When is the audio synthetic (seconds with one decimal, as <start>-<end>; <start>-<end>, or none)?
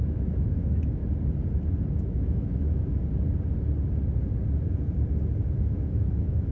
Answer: 0.0-1.0; 1.9-3.0; 5.6-6.5